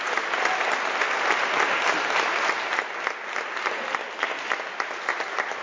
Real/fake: real